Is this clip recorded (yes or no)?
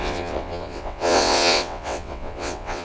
no